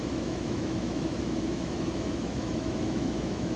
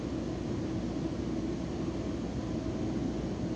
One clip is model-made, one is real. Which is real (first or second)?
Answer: second